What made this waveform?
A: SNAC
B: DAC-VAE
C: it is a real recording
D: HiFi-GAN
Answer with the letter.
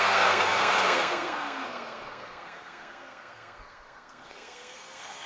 A